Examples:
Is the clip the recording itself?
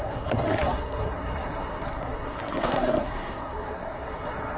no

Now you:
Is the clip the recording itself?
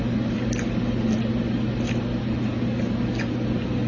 yes